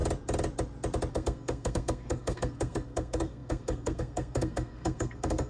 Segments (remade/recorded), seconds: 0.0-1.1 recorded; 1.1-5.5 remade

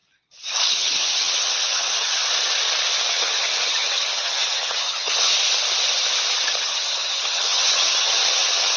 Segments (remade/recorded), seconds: 0.0-0.7 recorded; 0.7-2.2 remade; 2.2-3.1 recorded; 3.1-5.3 remade; 5.3-6.6 recorded; 6.6-8.8 remade

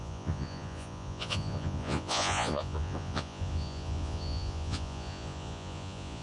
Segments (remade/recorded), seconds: 0.0-6.2 remade